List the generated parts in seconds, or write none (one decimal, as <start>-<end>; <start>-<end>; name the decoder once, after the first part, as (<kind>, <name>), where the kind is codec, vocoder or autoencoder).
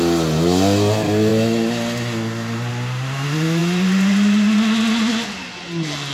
none